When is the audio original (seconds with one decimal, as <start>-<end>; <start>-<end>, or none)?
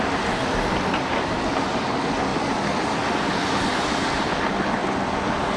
0.0-5.6